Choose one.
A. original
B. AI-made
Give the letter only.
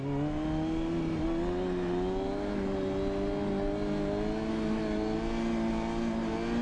A